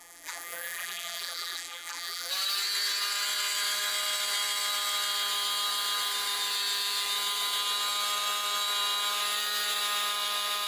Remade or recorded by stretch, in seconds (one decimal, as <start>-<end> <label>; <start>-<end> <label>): 0.0-2.3 remade; 2.3-10.7 recorded